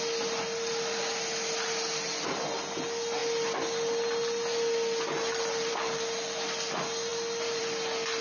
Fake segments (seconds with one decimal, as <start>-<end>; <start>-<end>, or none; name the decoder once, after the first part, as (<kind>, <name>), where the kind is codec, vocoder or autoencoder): none